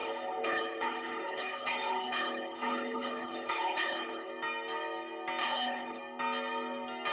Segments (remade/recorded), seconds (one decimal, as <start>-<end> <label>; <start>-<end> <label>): 0.0-4.3 remade; 4.3-5.4 recorded; 5.4-6.0 remade; 6.0-7.1 recorded